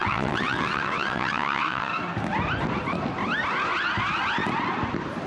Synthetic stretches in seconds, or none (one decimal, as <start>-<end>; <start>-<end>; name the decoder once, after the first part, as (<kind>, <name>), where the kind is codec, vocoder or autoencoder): 0.0-1.9 (vocoder, WaveNeXt)